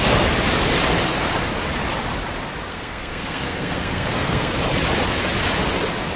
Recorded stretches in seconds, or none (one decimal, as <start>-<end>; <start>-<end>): 0.0-2.7; 4.5-6.2